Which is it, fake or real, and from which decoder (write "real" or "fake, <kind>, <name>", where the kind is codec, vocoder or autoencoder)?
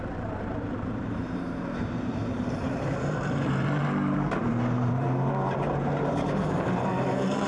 fake, vocoder, BigVGAN v2